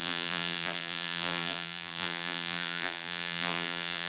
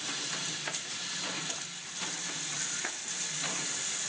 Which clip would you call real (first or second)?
second